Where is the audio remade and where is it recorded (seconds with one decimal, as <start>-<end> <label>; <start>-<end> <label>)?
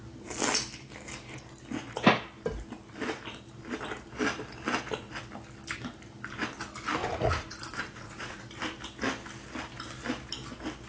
0.0-7.0 recorded; 7.0-8.4 remade; 8.4-10.9 recorded